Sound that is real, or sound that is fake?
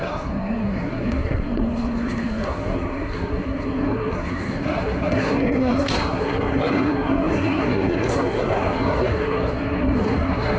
fake